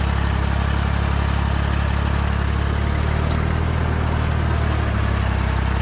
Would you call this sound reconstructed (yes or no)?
no